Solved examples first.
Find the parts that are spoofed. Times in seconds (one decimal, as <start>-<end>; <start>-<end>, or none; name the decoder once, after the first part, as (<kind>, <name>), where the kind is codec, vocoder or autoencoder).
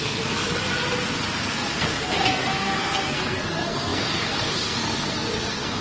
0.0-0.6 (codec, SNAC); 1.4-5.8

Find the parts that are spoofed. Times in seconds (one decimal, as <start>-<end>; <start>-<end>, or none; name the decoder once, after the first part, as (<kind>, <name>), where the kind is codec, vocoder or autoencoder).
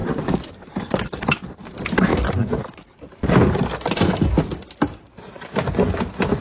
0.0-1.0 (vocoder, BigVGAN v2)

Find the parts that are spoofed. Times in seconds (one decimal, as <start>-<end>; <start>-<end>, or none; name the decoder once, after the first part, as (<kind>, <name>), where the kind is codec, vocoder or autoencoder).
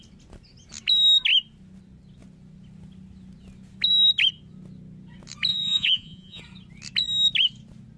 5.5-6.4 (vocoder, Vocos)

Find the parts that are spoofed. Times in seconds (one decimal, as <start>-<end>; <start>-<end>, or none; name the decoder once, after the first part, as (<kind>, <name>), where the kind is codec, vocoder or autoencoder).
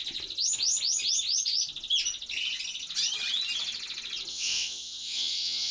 4.3-5.7 (vocoder, WaveNeXt)